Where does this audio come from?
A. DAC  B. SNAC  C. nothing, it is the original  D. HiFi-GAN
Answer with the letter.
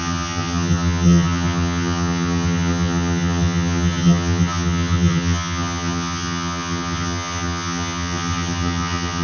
D